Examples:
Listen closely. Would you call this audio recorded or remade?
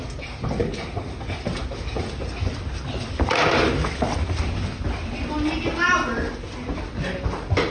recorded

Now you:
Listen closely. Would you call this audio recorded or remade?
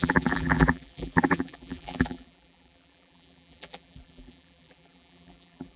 remade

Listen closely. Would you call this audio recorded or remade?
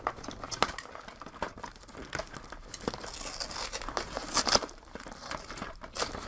recorded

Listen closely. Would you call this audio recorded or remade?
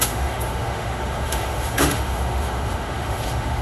remade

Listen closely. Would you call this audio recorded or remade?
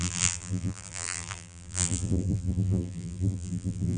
remade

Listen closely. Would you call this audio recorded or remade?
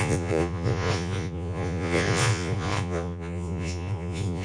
remade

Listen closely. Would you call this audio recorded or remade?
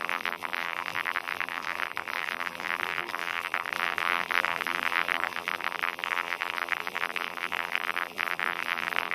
remade